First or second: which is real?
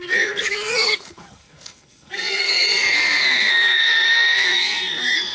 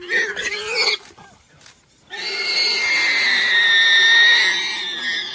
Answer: second